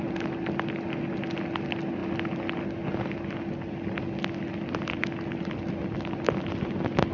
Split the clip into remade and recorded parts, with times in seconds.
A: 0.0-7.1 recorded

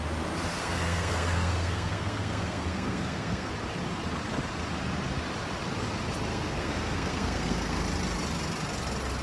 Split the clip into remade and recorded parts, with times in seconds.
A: 0.0-0.6 recorded; 0.6-3.5 remade; 3.5-6.3 recorded; 6.3-7.8 remade; 7.8-9.2 recorded

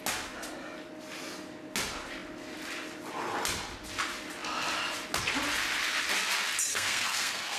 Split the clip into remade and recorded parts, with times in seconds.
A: 0.0-6.7 recorded; 6.7-7.6 remade

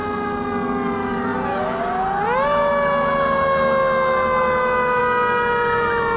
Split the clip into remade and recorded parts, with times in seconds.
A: 0.0-6.2 recorded

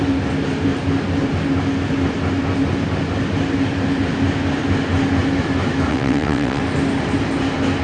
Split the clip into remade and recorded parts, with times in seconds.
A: 0.0-5.9 recorded; 5.9-6.6 remade; 6.6-7.8 recorded

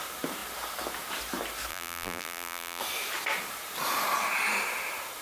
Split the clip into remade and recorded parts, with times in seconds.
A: 0.0-1.7 recorded; 1.7-2.8 remade; 2.8-5.2 recorded